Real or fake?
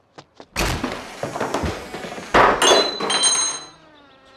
real